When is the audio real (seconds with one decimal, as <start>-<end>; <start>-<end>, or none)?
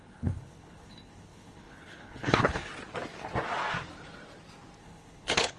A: 2.7-4.8